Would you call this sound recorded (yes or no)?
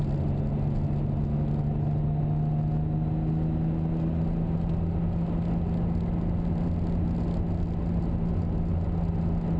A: yes